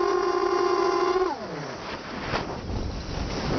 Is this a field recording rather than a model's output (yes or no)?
yes